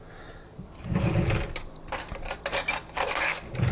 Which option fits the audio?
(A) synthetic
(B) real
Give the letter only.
B